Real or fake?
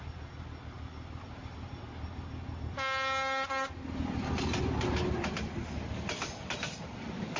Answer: real